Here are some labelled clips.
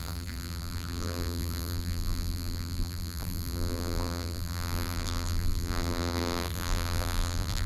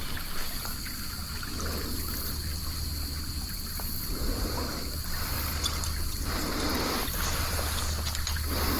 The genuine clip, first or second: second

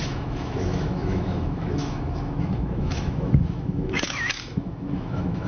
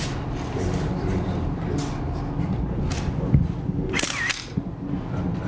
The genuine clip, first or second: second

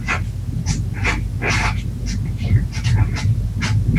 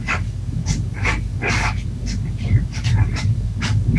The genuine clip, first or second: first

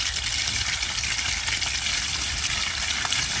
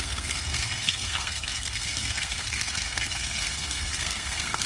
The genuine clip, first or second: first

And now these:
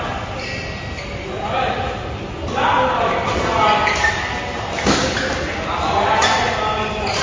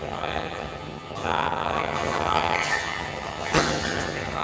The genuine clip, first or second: first